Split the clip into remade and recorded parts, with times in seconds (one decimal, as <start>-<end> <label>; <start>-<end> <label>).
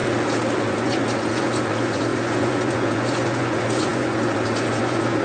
0.0-0.6 recorded; 0.6-5.2 remade